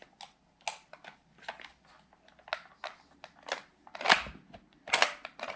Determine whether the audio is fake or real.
real